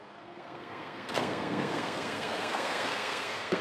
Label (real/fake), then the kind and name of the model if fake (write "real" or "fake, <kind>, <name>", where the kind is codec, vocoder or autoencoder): fake, codec, SNAC